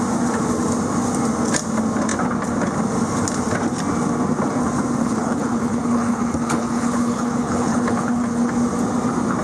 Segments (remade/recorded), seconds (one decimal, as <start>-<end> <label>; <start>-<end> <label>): 0.0-5.0 recorded; 5.0-8.5 remade; 8.5-9.4 recorded